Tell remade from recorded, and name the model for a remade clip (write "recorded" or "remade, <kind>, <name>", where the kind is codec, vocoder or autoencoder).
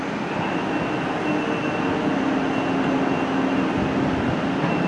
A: recorded